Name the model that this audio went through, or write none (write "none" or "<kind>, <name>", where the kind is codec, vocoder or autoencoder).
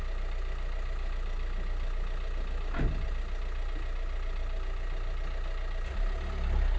none